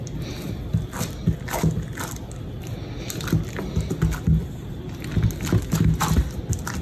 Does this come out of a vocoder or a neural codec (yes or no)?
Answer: no